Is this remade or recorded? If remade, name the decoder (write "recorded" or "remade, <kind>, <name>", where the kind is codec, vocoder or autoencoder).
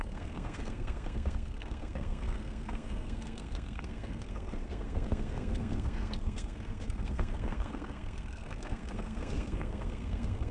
remade, codec, SNAC